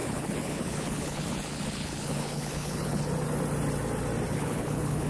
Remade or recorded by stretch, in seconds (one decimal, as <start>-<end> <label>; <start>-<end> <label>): 0.0-3.0 remade; 3.0-4.3 recorded; 4.3-5.1 remade